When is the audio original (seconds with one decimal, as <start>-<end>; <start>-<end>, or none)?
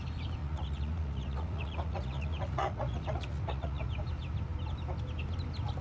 0.0-0.4; 3.9-5.8